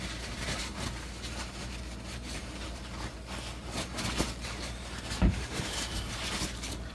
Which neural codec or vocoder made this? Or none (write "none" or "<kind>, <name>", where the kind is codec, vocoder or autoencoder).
none